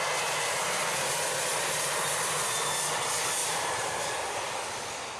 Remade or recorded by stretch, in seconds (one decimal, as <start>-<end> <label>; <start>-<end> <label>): 0.0-1.5 recorded; 1.5-2.0 remade; 2.0-3.4 recorded; 3.4-4.6 remade; 4.6-5.2 recorded

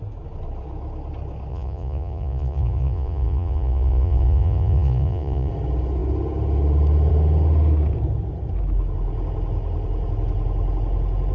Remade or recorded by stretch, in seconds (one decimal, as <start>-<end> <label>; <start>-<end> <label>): 0.0-1.5 recorded; 1.5-5.5 remade; 5.5-11.3 recorded

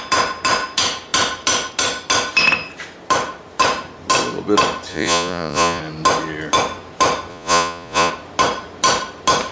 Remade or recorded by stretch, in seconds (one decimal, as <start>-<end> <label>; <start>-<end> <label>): 0.0-4.9 recorded; 4.9-5.8 remade; 5.8-7.3 recorded; 7.3-8.1 remade; 8.1-9.5 recorded

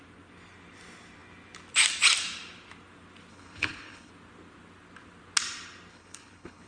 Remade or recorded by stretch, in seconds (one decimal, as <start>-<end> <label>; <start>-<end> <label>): 0.0-3.3 recorded; 3.3-4.1 remade; 4.1-5.9 recorded; 5.9-6.7 remade

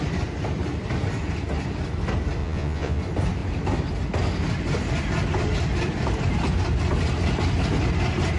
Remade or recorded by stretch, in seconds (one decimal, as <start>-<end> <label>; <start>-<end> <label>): 0.0-2.4 recorded; 2.4-3.0 remade; 3.0-8.4 recorded

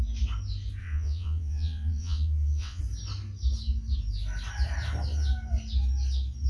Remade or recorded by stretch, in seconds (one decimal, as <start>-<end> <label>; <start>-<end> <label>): 0.0-0.8 recorded; 0.8-2.8 remade; 2.8-6.5 recorded